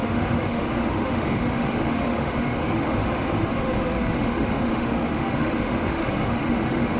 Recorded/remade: remade